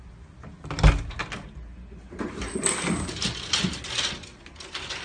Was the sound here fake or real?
real